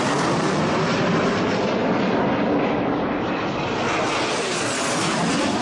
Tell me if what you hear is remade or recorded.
recorded